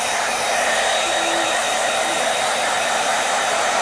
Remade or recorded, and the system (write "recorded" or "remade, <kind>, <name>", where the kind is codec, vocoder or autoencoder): remade, vocoder, BigVGAN v2